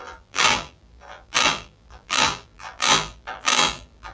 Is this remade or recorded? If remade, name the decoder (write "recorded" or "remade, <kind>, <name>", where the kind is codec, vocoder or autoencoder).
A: remade, vocoder, BigVGAN v2